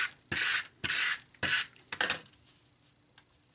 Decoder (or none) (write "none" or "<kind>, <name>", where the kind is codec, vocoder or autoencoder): none